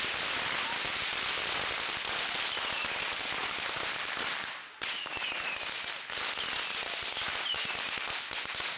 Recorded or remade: recorded